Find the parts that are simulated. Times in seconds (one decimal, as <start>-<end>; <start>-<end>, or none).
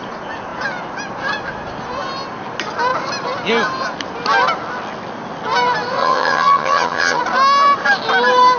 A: 6.0-7.2